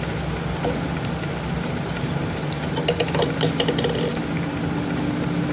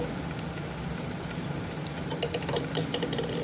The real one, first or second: first